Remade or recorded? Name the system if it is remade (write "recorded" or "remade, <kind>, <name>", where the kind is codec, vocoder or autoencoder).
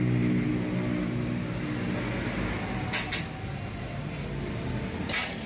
recorded